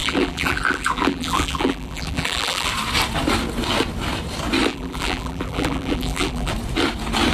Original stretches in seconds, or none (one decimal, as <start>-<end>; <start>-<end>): 2.7-4.7; 6.5-7.3